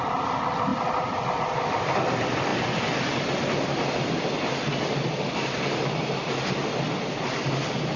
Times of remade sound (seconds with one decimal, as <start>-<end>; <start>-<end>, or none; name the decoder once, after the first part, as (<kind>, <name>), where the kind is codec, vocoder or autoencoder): none